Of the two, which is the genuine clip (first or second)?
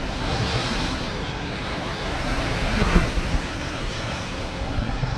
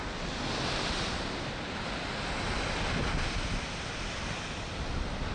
second